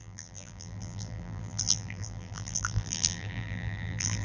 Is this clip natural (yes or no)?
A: no